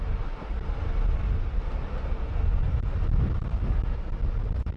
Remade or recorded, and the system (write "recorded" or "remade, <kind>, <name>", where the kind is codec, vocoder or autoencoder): recorded